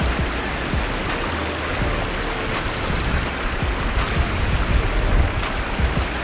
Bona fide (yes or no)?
yes